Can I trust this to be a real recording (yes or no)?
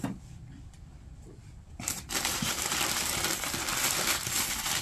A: no